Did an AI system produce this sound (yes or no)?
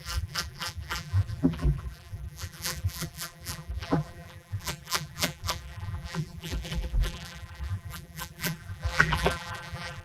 yes